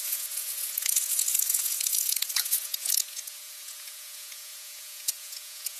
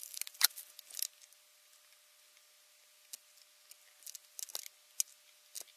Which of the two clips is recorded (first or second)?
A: second